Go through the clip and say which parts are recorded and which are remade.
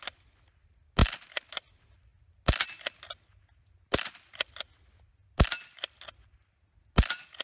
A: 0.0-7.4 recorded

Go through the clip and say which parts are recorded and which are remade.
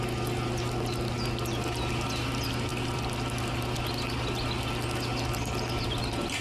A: 0.0-6.4 recorded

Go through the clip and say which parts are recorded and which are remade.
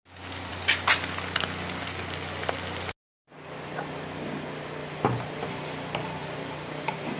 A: 0.0-6.2 recorded; 6.2-7.2 remade